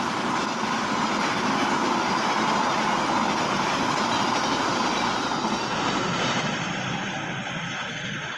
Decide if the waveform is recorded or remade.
recorded